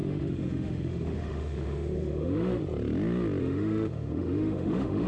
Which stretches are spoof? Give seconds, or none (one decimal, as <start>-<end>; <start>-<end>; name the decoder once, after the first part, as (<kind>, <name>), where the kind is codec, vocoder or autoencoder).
0.0-2.6 (autoencoder, DAC-VAE); 3.4-5.1